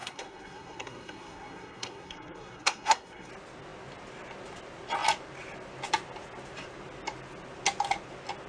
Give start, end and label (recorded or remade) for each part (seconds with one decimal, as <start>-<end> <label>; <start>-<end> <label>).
0.0-3.3 remade; 3.3-8.5 recorded